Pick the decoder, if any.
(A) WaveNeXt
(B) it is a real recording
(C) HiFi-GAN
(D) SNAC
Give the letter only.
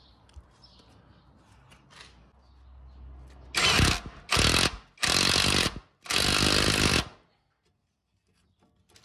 B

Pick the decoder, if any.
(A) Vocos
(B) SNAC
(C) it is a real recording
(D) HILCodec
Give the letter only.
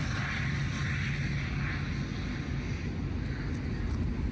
C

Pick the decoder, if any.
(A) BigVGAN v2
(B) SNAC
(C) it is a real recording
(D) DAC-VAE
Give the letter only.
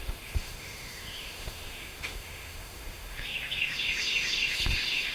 D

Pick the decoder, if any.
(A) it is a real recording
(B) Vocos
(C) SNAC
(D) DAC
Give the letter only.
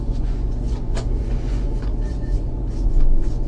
B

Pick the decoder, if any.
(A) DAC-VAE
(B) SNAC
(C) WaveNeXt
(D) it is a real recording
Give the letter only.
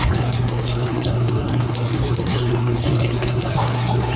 B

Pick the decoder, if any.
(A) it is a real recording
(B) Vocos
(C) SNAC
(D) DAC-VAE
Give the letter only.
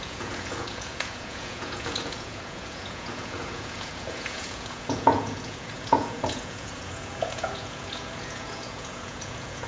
B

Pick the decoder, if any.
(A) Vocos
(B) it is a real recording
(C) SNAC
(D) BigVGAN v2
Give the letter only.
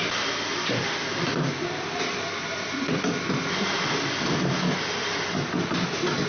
D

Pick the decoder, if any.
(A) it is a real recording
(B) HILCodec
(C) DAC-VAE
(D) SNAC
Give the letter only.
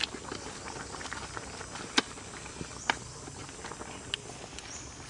A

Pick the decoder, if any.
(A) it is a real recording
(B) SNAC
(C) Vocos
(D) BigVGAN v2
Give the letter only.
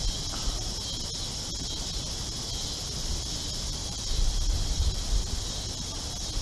D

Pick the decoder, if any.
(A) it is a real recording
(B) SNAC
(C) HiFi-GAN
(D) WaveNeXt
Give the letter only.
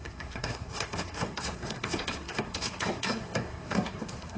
B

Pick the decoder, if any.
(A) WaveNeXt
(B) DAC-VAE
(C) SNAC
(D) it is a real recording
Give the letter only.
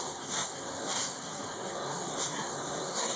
C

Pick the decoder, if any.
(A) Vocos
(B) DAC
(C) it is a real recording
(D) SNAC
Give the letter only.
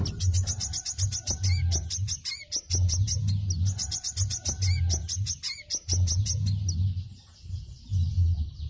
C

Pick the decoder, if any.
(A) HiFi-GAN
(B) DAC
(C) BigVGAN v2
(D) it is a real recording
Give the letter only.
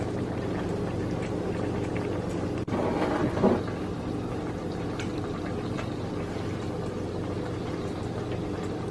C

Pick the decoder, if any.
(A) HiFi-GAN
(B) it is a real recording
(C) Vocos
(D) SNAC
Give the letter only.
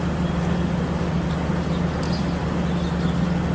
B